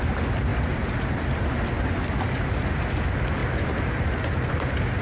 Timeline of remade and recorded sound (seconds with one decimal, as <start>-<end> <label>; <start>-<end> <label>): 0.0-0.5 recorded; 0.5-2.5 remade; 2.5-3.4 recorded; 3.4-4.5 remade; 4.5-5.0 recorded